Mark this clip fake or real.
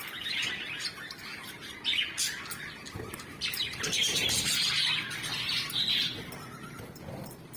real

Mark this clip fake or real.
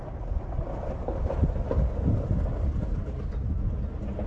real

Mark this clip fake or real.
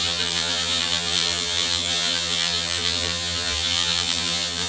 fake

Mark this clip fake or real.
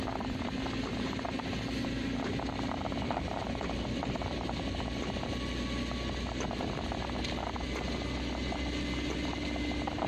real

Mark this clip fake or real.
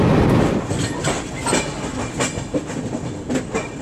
real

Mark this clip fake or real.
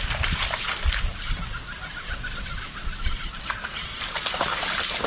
real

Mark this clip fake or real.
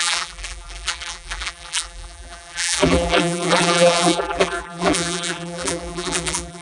fake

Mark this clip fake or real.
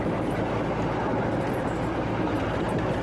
real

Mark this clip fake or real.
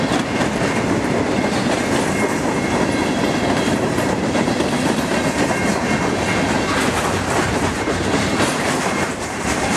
fake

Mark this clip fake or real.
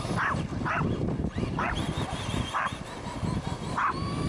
real